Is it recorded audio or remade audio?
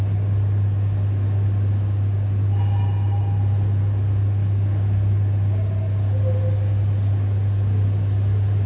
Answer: recorded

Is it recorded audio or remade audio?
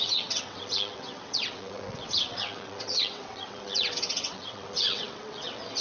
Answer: remade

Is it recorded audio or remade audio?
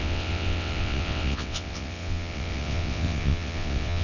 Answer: remade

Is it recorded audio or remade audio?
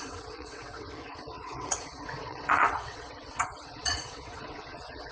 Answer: remade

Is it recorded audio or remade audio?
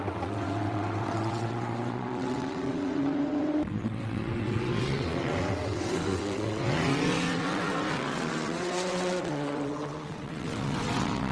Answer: remade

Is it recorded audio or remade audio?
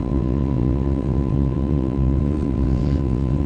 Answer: remade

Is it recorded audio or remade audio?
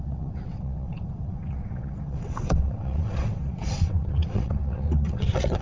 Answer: remade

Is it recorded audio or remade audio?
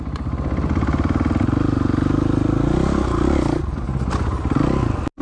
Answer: recorded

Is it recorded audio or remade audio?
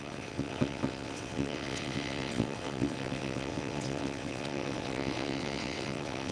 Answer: remade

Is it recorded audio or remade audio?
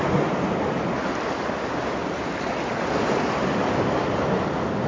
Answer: recorded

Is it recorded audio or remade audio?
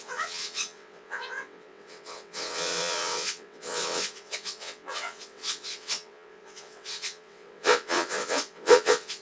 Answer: remade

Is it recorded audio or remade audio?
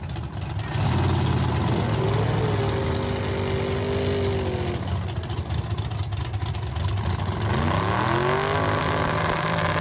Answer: recorded